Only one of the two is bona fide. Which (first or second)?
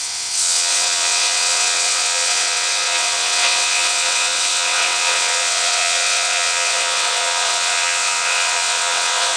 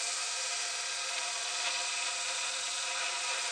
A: second